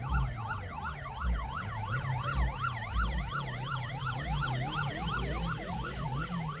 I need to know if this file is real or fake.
real